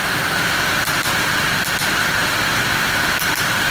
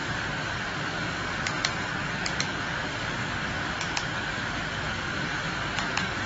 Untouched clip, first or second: first